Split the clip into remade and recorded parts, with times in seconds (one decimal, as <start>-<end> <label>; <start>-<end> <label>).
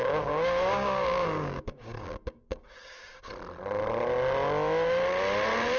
0.0-3.3 remade; 3.3-5.8 recorded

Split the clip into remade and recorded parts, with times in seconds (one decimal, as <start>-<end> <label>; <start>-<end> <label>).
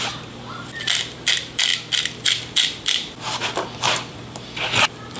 0.0-1.7 remade; 1.7-4.1 recorded; 4.1-5.2 remade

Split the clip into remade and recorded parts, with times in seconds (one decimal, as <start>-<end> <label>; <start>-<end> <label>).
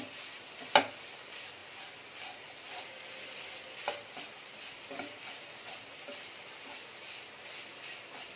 0.0-8.4 recorded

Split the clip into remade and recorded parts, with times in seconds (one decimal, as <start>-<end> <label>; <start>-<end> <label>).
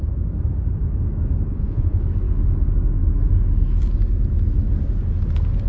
0.0-1.5 recorded; 1.5-2.0 remade; 2.0-5.7 recorded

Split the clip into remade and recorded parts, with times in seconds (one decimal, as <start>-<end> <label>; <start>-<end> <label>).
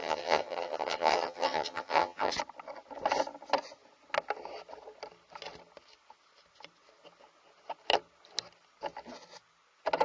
0.0-2.3 remade; 2.3-10.0 recorded